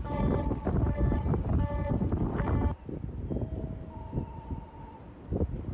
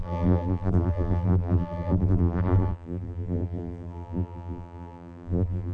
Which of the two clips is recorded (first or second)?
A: first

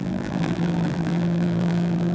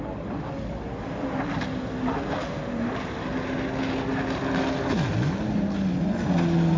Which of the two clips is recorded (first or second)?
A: second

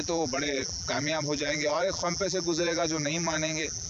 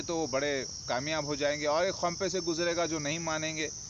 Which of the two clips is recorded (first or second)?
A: second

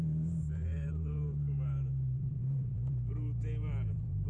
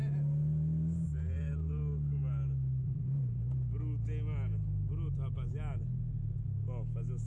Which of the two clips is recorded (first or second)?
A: second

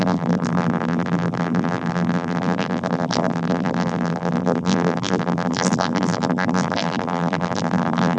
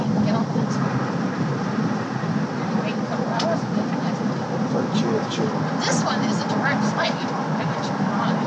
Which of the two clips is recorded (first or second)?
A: second